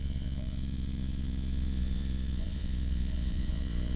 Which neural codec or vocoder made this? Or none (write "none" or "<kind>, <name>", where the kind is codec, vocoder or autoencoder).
vocoder, Vocos